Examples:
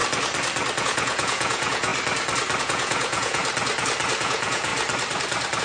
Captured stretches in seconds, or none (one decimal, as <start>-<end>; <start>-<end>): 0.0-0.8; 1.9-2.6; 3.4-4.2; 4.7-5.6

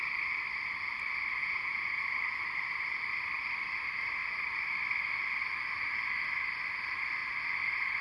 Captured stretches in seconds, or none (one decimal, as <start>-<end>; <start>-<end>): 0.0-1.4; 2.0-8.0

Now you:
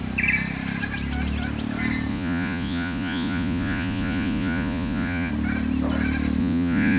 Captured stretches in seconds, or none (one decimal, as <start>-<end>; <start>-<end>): 0.0-2.1; 5.3-6.4